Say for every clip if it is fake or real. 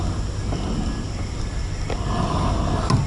real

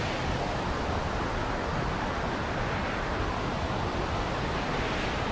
real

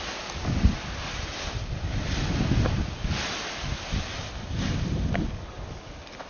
real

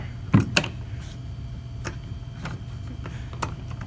real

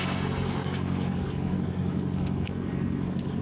fake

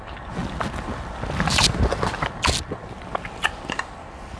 real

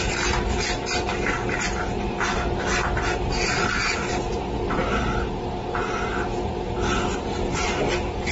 real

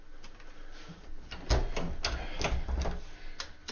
real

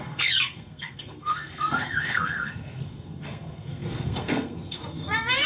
fake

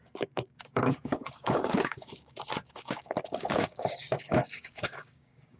fake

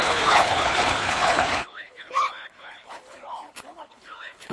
fake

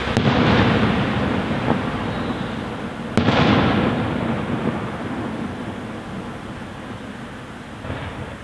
real